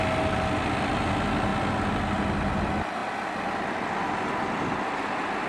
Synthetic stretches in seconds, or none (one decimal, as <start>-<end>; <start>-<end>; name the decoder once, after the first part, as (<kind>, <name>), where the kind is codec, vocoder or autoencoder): none